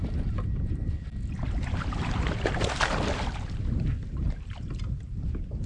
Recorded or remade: remade